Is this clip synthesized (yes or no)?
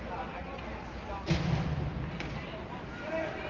no